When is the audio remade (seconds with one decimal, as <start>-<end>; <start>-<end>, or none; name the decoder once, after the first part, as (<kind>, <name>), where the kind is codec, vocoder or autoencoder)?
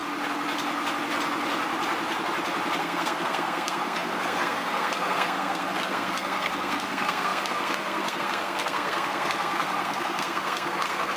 2.8-11.2 (codec, SNAC)